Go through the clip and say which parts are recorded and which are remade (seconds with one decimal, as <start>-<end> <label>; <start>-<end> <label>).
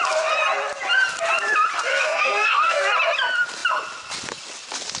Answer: 0.0-1.9 recorded; 1.9-2.8 remade; 2.8-5.0 recorded